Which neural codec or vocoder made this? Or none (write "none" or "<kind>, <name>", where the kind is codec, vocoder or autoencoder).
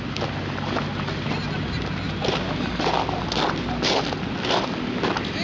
none